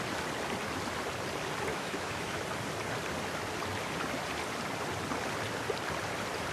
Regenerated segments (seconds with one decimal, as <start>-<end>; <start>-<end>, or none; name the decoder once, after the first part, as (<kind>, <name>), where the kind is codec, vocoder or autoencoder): 1.7-2.4 (autoencoder, DAC-VAE)